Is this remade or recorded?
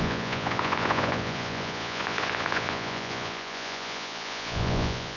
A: remade